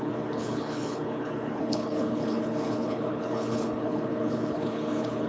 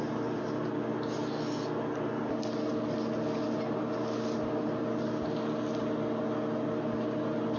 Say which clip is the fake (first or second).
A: first